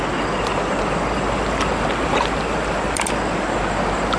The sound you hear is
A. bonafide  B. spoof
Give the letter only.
A